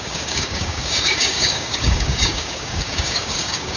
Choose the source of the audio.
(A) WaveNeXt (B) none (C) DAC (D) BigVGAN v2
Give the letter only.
C